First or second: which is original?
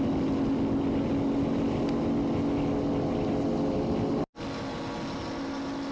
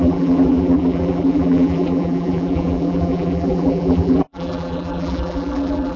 first